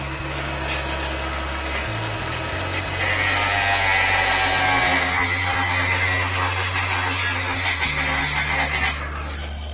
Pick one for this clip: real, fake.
real